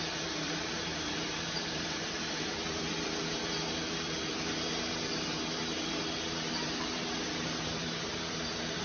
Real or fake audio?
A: fake